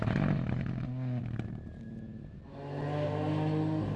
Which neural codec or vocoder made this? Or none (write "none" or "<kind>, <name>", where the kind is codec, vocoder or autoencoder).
none